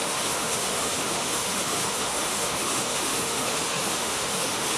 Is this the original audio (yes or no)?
no